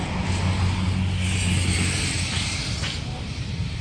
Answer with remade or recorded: recorded